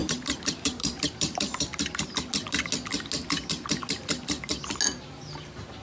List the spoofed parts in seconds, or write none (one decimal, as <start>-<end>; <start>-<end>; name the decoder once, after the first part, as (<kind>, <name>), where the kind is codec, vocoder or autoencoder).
0.0-2.3 (vocoder, BigVGAN v2)